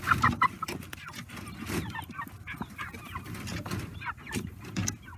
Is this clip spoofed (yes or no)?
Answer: no